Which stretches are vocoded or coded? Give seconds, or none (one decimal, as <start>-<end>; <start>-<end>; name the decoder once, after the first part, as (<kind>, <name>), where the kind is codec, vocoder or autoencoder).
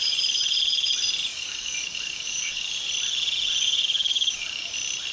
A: 1.3-2.7 (codec, DAC); 3.6-4.4